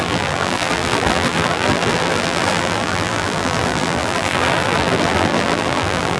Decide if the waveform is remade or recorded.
remade